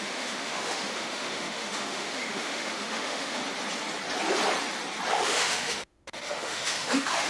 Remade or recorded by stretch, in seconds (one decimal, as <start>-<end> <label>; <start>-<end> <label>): 0.0-3.4 remade; 3.4-5.1 recorded; 5.1-7.3 remade